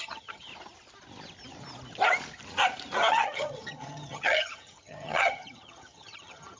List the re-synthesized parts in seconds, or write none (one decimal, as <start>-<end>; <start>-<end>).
0.0-0.5; 3.1-6.6